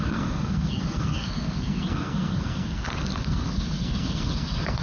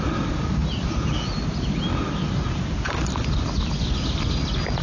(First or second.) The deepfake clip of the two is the first